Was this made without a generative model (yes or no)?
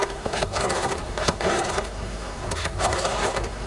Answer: no